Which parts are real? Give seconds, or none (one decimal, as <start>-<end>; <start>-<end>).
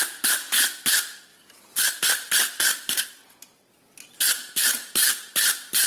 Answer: 3.2-4.3; 5.0-5.9